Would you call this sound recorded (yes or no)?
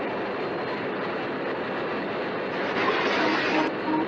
yes